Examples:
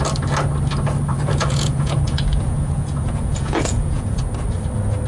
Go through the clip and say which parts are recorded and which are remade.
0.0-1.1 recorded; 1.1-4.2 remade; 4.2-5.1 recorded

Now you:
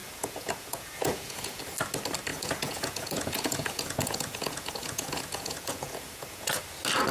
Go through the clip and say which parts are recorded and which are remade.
0.0-1.6 remade; 1.6-2.3 recorded; 2.3-6.6 remade; 6.6-7.1 recorded

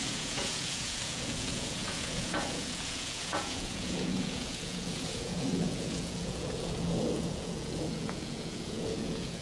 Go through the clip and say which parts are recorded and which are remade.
0.0-9.4 remade